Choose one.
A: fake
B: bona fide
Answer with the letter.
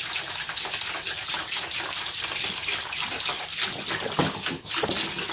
B